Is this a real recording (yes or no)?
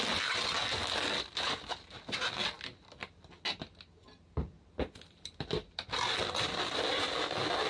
yes